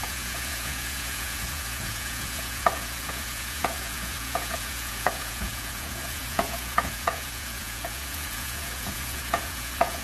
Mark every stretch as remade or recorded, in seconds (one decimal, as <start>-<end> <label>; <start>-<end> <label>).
0.0-10.0 remade